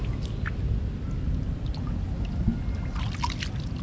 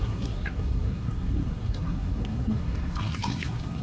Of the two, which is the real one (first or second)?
first